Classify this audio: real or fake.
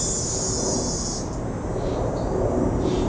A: real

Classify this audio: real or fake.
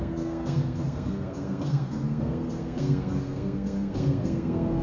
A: fake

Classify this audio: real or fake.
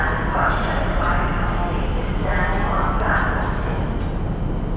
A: real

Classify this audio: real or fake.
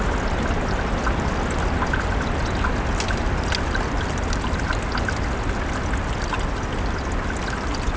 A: real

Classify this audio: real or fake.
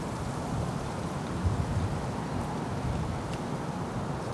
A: real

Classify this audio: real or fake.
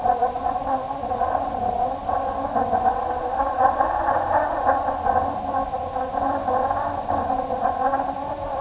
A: real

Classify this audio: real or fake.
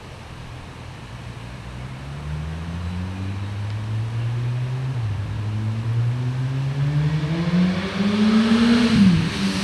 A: real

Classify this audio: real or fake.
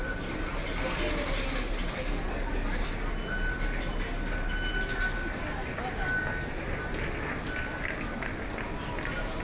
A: real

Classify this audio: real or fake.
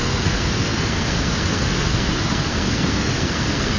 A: fake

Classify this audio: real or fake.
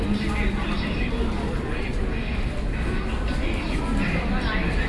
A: real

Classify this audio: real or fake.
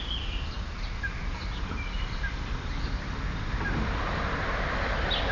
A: real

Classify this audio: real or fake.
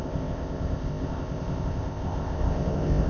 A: fake